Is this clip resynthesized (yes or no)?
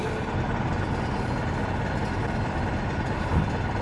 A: no